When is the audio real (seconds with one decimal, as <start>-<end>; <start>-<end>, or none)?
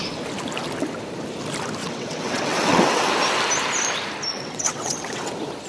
0.0-1.8; 3.1-4.3; 5.3-5.7